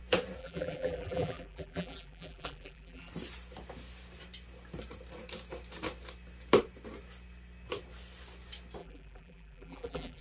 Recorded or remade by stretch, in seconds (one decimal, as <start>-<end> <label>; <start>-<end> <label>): 0.0-0.4 recorded; 0.4-3.1 remade; 3.1-8.8 recorded; 8.8-10.2 remade